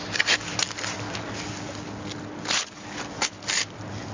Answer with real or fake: real